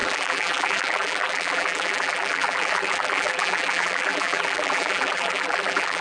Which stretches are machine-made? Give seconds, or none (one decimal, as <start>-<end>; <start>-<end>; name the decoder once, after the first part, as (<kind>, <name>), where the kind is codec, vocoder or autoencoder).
0.0-6.0 (vocoder, BigVGAN v2)